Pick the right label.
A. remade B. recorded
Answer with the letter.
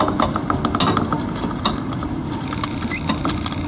B